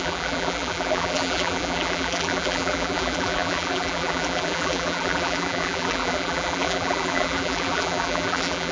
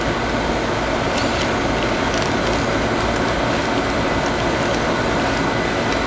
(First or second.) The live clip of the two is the second